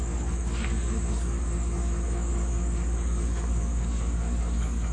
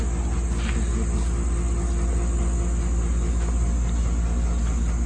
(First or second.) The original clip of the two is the second